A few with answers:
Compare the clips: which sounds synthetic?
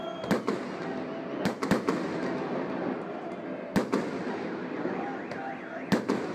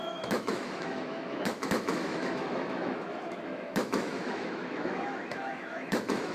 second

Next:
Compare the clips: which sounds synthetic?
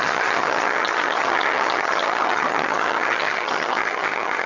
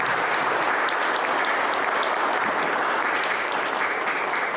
first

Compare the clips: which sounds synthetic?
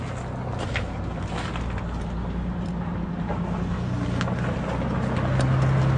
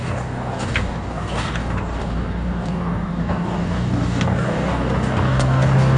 second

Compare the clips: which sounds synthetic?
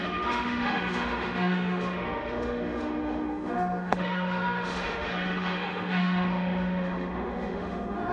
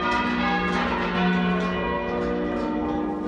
first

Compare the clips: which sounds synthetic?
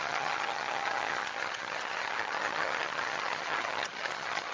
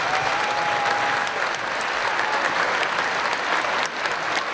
first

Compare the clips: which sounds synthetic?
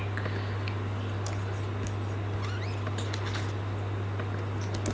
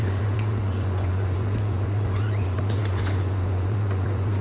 second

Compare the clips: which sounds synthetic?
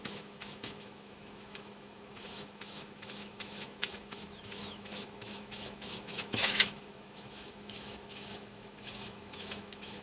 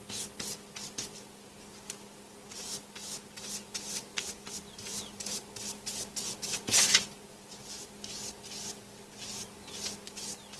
first